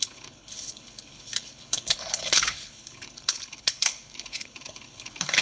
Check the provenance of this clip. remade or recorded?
remade